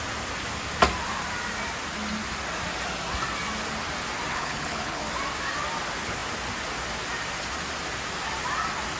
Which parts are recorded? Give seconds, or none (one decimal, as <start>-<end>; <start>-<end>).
0.0-4.3; 5.0-9.0